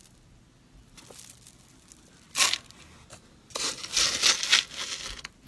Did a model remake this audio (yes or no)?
no